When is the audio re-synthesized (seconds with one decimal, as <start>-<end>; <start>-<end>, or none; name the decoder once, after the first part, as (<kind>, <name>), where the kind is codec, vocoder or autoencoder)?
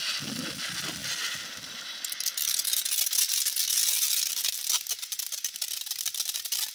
none